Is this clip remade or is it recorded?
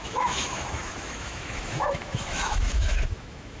remade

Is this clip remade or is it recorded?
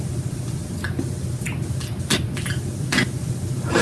recorded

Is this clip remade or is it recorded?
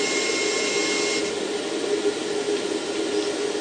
recorded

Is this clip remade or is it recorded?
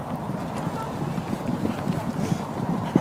recorded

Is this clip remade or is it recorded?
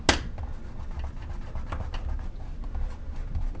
recorded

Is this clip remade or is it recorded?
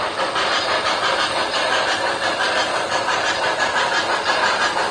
recorded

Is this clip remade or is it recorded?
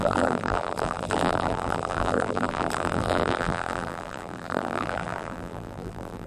remade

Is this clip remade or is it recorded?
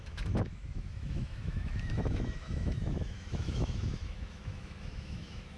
remade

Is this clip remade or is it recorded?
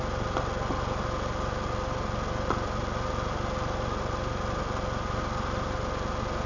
recorded